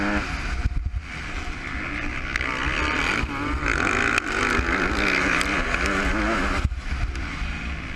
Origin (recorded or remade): recorded